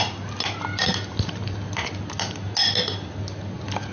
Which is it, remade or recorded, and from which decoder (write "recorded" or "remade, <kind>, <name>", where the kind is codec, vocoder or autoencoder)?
recorded